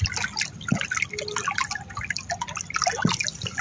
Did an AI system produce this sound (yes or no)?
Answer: no